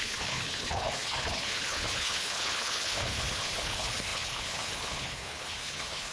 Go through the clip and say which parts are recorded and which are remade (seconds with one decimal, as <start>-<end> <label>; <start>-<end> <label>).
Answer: 0.0-6.1 remade